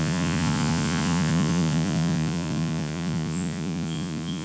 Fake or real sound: fake